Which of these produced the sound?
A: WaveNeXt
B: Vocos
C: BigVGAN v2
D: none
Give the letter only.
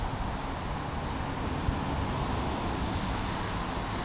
D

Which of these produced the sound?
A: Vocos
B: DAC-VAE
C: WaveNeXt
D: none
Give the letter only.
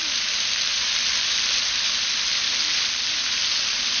D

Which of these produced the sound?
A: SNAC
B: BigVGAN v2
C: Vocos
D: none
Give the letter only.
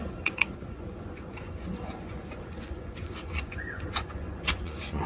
C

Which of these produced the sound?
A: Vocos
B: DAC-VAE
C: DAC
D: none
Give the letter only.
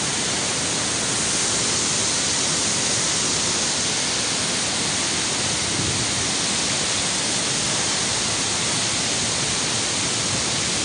D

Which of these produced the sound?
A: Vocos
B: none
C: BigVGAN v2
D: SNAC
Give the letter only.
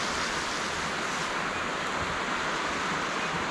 B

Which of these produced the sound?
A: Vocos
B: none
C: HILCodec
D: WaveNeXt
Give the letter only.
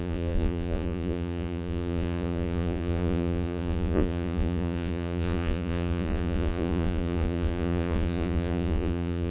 A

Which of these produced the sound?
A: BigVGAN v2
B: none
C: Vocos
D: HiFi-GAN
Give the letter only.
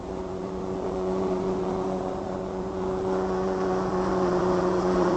C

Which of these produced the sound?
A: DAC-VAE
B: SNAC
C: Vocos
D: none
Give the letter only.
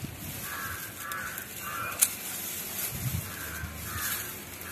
D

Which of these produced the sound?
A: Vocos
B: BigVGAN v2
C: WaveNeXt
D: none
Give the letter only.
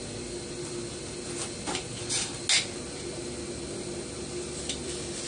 D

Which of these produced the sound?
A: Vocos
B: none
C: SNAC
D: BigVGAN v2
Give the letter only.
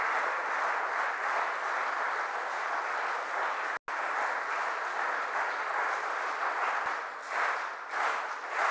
B